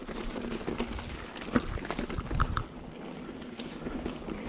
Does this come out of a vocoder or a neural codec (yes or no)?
no